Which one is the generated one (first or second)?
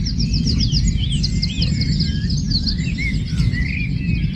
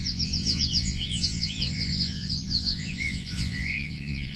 second